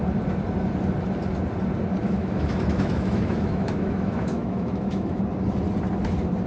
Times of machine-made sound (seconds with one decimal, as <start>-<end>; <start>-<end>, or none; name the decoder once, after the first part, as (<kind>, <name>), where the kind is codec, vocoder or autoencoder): 2.0-5.2 (autoencoder, DAC-VAE)